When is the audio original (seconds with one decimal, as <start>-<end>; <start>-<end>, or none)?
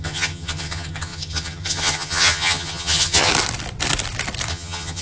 3.3-4.5